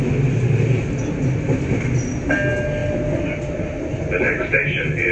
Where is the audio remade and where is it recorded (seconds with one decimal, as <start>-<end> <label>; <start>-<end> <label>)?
0.0-5.1 recorded